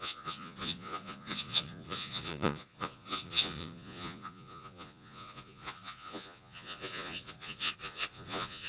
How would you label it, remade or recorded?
remade